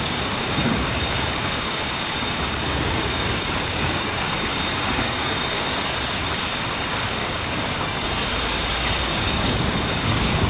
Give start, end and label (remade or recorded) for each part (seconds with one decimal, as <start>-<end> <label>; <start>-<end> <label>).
0.0-5.7 remade; 5.7-6.2 recorded; 6.2-8.2 remade; 8.2-9.0 recorded; 9.0-10.5 remade